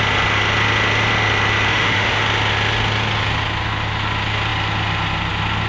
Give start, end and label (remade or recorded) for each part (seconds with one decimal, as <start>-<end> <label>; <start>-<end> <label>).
0.0-1.7 recorded; 1.7-2.2 remade; 2.2-5.7 recorded